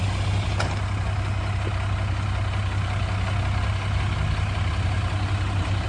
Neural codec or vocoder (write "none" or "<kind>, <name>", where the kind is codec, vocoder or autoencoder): none